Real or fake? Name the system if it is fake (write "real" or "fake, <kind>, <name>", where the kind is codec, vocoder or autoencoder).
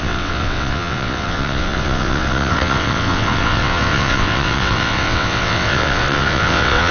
fake, vocoder, WaveNeXt